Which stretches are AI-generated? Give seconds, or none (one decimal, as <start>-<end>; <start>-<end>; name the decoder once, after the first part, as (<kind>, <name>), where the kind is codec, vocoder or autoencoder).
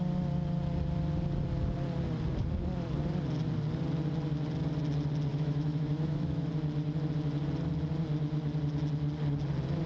5.3-6.5 (autoencoder, DAC-VAE)